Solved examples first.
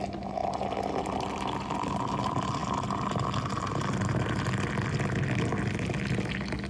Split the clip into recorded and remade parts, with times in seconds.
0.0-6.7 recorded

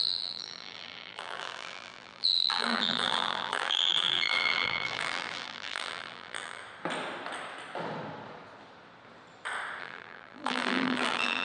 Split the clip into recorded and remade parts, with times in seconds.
0.0-6.6 remade; 6.6-9.8 recorded; 9.8-11.4 remade

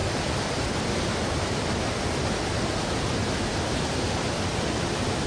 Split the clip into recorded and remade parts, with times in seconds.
0.0-5.3 recorded

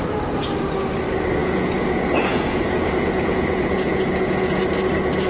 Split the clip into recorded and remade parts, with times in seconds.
0.0-1.4 recorded; 1.4-4.6 remade; 4.6-5.3 recorded